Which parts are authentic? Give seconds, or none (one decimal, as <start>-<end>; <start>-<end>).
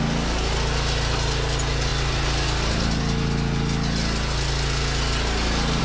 0.0-5.8